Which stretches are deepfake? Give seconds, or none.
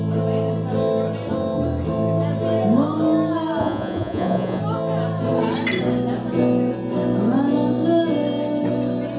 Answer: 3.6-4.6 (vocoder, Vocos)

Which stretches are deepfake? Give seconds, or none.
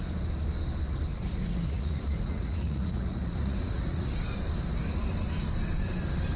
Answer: 1.1-4.1 (vocoder, Vocos)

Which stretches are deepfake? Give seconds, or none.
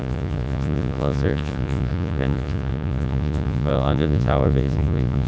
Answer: 0.0-5.3 (vocoder, Vocos)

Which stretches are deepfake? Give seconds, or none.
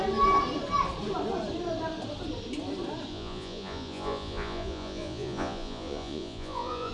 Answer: 3.1-6.9 (vocoder, Vocos)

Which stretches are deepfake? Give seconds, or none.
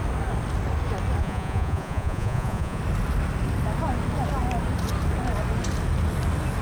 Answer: 1.2-2.8 (vocoder, Vocos)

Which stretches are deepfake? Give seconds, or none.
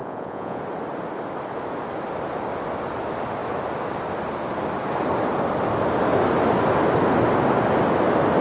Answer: 0.0-0.6 (vocoder, Vocos)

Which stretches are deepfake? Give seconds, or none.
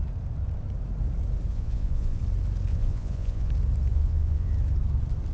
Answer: 1.5-2.2 (vocoder, Vocos); 2.7-3.5; 3.9-4.5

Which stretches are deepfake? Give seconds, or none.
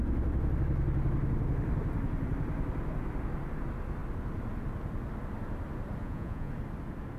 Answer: 6.0-6.5 (vocoder, Vocos)